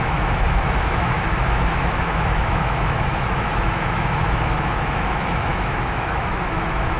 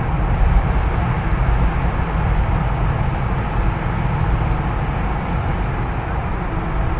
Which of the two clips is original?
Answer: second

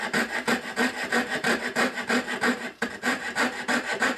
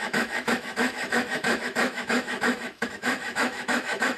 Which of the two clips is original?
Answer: first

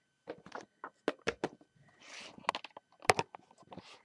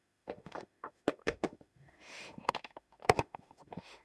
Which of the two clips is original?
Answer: first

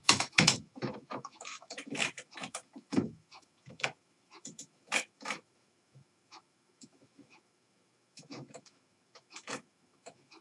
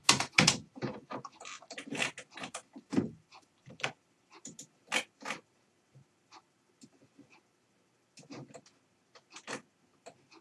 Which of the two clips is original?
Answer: second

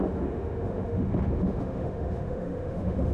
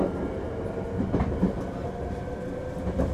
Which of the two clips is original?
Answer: second